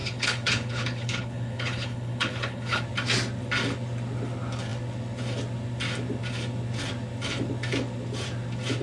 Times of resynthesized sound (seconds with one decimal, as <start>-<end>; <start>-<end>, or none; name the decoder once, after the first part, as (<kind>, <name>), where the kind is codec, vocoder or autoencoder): 0.0-2.8 (codec, HILCodec)